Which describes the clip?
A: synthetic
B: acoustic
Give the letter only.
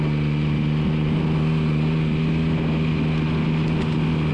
B